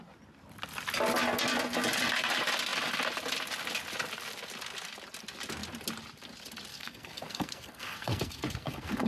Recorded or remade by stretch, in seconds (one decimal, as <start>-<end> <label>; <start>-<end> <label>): 0.0-6.7 recorded; 6.7-9.1 remade